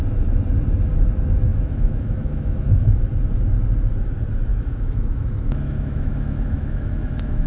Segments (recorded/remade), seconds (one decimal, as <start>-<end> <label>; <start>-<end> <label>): 0.0-1.5 recorded; 1.5-3.0 remade; 3.0-4.5 recorded; 4.5-7.5 remade

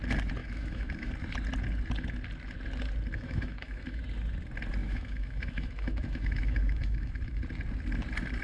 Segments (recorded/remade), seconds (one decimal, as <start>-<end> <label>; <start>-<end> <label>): 0.0-0.4 recorded; 0.4-1.1 remade; 1.1-3.1 recorded; 3.1-4.0 remade; 4.0-4.8 recorded; 4.8-7.4 remade; 7.4-8.4 recorded

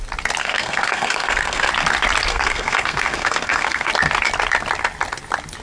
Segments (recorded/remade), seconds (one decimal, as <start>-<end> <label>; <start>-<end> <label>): 0.0-0.4 recorded; 0.4-1.7 remade; 1.7-2.3 recorded; 2.3-3.9 remade; 3.9-5.6 recorded

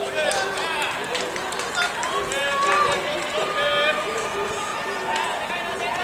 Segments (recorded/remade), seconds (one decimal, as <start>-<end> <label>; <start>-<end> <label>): 0.0-4.7 recorded; 4.7-6.0 remade

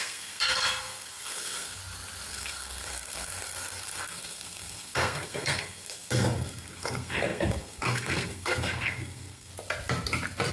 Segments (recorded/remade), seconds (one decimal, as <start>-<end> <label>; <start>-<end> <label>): 0.0-1.8 remade; 1.8-2.3 recorded; 2.3-9.5 remade; 9.5-10.5 recorded

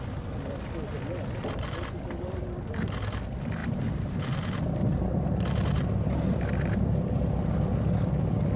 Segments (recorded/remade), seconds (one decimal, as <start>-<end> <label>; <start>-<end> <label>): 0.0-8.6 recorded

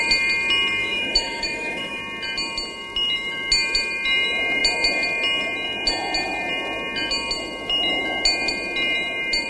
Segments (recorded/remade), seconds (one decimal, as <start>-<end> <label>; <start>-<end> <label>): 0.0-0.8 recorded; 0.8-2.0 remade; 2.0-9.5 recorded